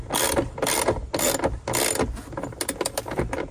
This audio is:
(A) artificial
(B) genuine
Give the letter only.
B